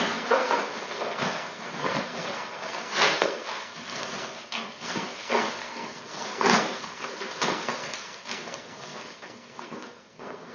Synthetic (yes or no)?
yes